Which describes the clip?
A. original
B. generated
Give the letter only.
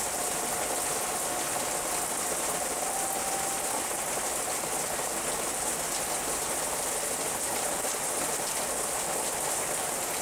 A